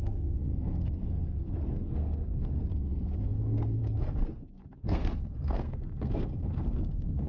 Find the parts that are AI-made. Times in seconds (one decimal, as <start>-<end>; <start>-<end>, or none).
0.0-7.3